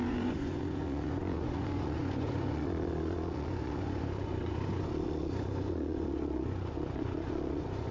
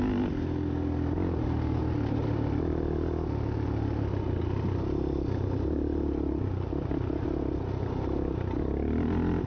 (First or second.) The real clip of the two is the second